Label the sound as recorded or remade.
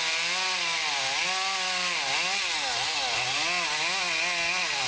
recorded